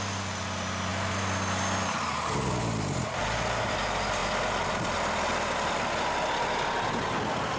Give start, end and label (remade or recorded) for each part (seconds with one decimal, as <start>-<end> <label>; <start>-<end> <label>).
0.0-7.6 recorded